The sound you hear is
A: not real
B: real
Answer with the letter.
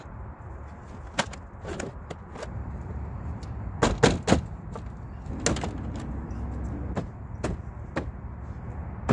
B